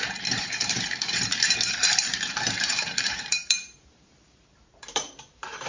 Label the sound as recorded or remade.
remade